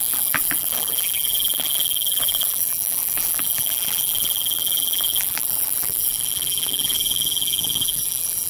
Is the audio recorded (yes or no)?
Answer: no